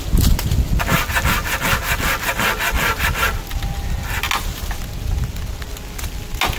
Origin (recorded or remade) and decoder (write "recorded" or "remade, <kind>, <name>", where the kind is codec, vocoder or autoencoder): recorded